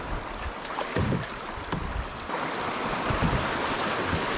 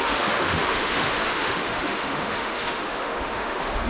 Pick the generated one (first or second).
second